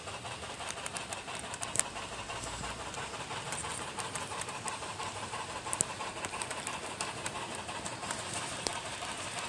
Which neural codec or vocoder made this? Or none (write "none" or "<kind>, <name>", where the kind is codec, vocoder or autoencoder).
vocoder, BigVGAN v2